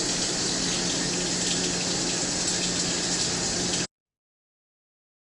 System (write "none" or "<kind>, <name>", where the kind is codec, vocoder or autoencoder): none